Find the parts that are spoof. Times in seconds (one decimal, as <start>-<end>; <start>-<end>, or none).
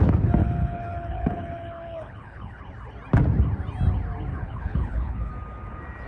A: 0.4-2.6; 4.3-5.3